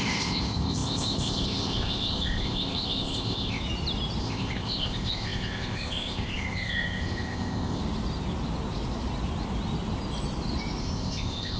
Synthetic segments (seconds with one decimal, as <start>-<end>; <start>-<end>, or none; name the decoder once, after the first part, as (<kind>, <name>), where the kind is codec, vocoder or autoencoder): 0.0-3.6 (codec, ZipCodec); 4.2-7.8; 10.8-11.6